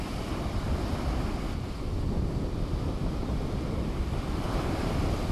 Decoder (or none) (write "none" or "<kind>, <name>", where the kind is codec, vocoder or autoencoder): none